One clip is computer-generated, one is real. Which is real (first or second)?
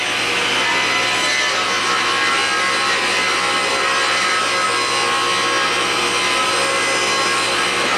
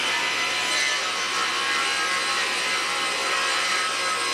first